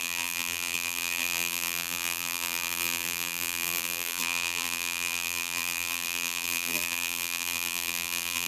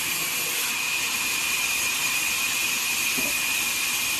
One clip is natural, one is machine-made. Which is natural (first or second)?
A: second